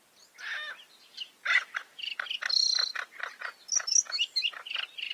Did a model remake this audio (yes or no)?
no